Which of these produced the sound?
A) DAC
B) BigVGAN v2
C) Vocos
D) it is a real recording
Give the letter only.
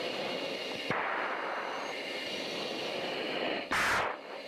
D